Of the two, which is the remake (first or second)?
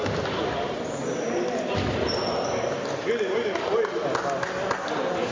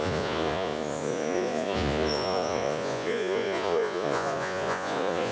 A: second